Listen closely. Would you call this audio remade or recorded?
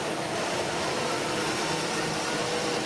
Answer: recorded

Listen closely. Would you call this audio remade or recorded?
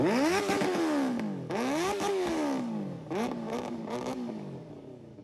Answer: remade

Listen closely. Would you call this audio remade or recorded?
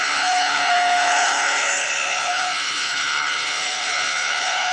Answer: remade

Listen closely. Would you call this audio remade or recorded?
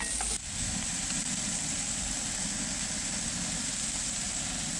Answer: recorded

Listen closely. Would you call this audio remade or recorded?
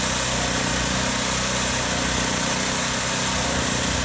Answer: recorded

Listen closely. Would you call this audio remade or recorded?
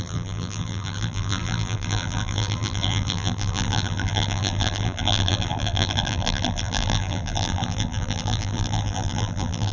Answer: remade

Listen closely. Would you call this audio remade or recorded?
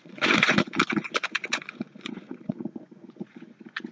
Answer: remade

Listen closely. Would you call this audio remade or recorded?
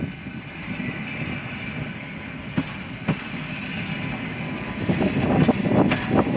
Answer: recorded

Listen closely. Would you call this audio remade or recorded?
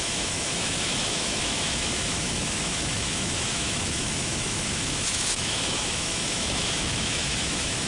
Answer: remade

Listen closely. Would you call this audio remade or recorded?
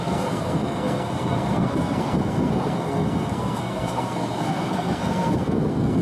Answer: remade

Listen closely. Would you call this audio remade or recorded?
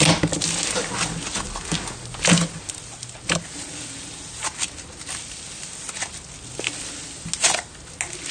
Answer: recorded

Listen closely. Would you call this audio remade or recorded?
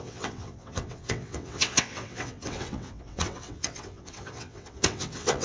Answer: remade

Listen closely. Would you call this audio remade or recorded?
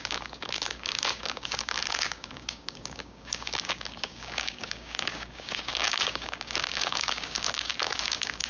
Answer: remade